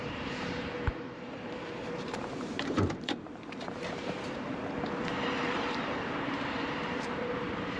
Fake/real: fake